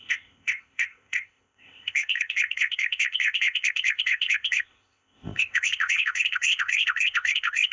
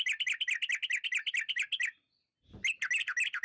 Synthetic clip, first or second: first